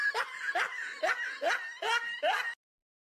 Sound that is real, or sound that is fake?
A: real